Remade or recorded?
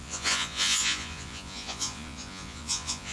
remade